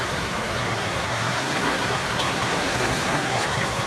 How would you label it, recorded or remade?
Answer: remade